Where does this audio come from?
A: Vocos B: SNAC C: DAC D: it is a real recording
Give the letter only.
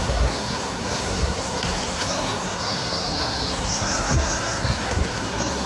B